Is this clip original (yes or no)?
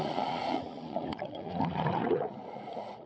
no